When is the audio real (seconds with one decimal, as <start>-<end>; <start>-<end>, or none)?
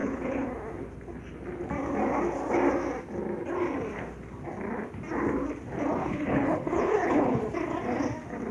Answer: 0.5-6.0; 7.4-8.5